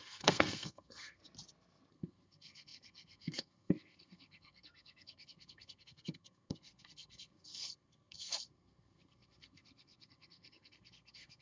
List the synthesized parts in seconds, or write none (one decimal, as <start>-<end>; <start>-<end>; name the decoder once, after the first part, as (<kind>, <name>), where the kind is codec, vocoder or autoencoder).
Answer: 0.0-1.2 (codec, SNAC); 1.9-11.4